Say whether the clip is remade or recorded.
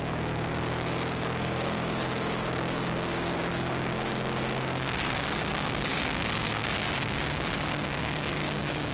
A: remade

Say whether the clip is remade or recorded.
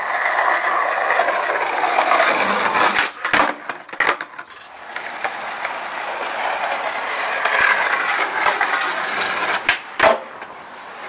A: recorded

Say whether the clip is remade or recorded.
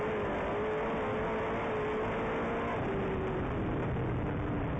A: recorded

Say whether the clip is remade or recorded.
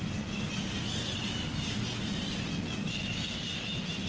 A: recorded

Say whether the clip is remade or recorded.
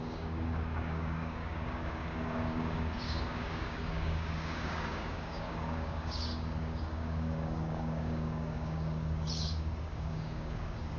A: remade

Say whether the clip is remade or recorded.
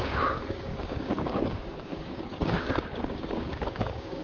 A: remade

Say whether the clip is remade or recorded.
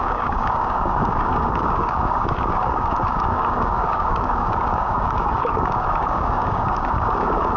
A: remade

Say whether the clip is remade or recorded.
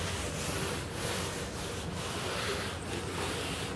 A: recorded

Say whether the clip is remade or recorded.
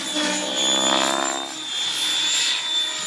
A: recorded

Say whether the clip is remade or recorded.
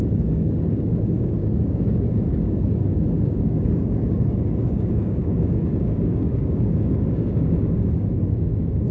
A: remade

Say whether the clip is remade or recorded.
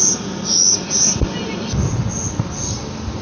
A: recorded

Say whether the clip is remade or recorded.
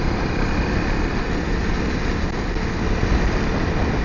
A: recorded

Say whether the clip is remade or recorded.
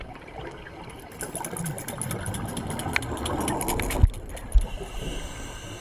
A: recorded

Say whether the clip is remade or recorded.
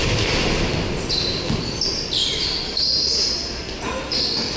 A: recorded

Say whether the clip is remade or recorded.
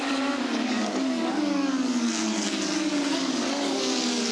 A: remade